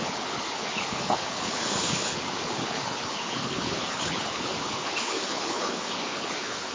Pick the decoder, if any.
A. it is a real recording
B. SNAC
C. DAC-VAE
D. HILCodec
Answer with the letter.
D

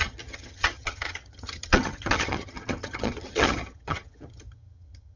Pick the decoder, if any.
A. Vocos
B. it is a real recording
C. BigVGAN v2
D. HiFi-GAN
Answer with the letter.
D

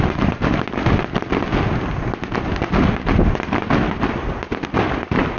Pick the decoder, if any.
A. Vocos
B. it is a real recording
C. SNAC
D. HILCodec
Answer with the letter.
B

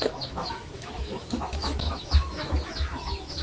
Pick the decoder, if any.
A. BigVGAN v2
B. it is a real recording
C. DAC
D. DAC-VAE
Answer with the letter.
D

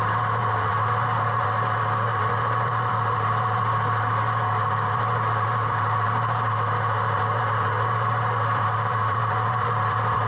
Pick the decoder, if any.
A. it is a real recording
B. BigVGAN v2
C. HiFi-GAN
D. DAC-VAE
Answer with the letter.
B